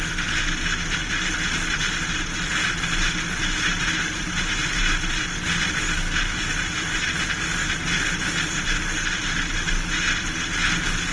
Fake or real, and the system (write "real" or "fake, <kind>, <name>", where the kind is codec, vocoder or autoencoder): real